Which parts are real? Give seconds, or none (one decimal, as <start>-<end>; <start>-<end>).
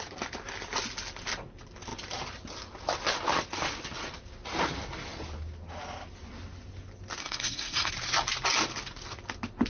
0.0-7.2; 7.9-9.7